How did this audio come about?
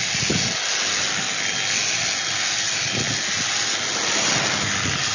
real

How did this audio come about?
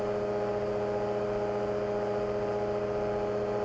real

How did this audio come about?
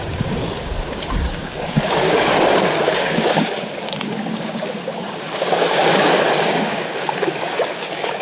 fake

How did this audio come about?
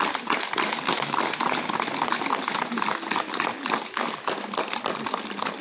real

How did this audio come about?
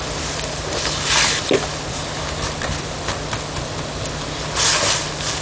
real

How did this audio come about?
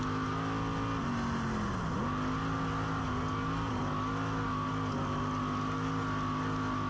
real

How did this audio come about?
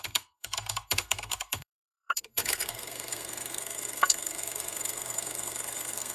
fake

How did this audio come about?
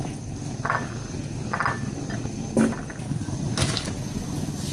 real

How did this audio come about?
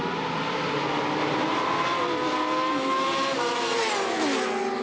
real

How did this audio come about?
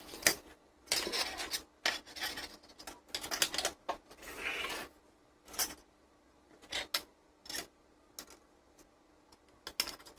real